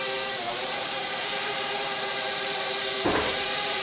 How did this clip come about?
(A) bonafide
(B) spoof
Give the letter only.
B